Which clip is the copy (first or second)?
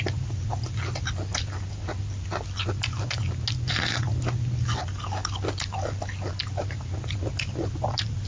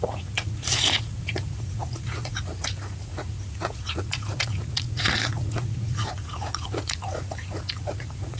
second